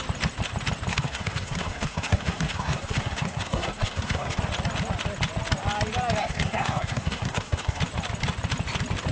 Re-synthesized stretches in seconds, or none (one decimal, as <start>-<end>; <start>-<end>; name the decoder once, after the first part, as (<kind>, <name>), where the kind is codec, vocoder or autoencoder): 0.9-4.4 (codec, SNAC); 6.2-7.8